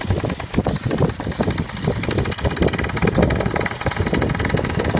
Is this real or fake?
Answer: real